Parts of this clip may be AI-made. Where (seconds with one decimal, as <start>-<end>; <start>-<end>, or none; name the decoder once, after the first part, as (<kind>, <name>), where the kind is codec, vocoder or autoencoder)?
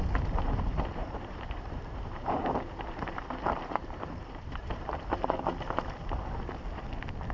1.0-5.1 (vocoder, BigVGAN v2)